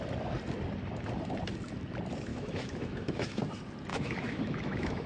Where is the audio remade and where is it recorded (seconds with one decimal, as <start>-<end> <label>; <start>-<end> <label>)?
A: 0.0-2.3 recorded; 2.3-3.4 remade; 3.4-3.9 recorded; 3.9-5.1 remade